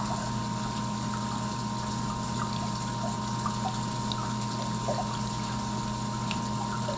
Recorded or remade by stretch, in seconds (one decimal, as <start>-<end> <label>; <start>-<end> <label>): 0.0-0.4 recorded; 0.4-2.9 remade; 2.9-7.0 recorded

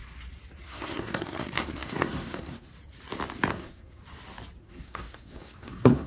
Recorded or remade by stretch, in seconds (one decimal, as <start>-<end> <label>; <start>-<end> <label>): 0.0-0.6 recorded; 0.6-2.7 remade; 2.7-3.5 recorded; 3.5-4.0 remade; 4.0-4.6 recorded; 4.6-6.1 remade

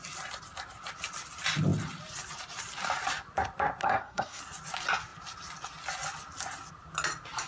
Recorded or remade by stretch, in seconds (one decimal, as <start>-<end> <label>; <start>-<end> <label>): 0.0-3.8 recorded; 3.8-4.4 remade; 4.4-7.5 recorded

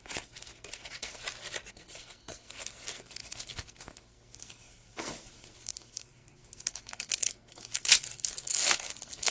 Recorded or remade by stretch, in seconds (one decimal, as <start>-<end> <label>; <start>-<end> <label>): 0.0-1.2 remade; 1.2-1.7 recorded; 1.7-9.3 remade

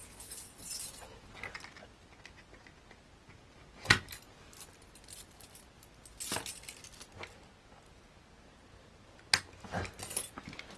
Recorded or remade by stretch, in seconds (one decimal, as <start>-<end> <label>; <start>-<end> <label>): 0.0-10.8 recorded